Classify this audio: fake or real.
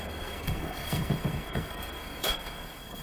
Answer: fake